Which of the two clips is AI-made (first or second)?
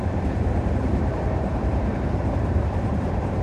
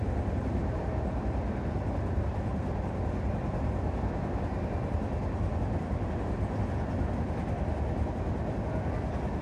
first